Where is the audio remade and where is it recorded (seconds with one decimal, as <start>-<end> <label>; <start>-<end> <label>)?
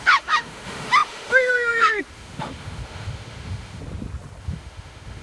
0.0-3.8 remade; 3.8-4.4 recorded; 4.4-5.2 remade